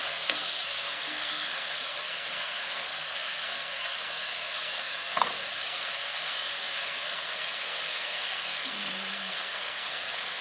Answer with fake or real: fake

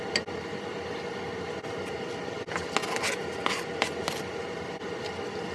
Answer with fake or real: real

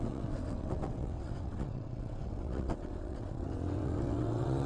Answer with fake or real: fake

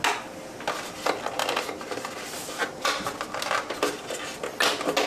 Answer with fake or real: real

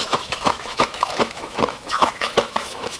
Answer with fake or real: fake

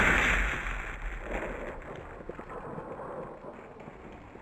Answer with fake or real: real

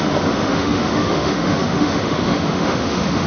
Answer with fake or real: fake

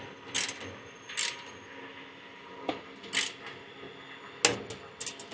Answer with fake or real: real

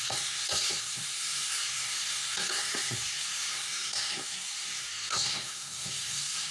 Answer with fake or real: fake